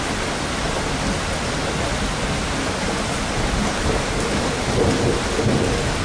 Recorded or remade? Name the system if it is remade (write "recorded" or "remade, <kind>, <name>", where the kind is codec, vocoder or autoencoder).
recorded